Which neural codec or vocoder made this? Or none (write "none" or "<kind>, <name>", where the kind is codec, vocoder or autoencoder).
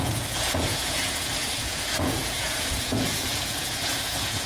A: vocoder, Vocos